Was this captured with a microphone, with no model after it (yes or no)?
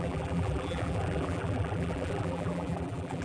no